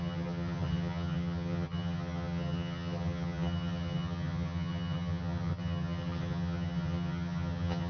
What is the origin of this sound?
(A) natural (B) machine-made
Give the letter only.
B